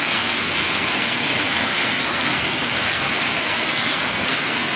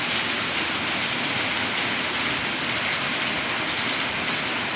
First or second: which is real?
second